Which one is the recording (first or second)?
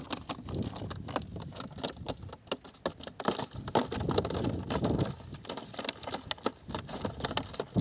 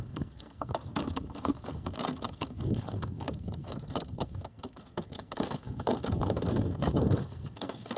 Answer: first